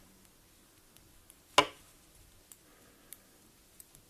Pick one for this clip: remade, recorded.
recorded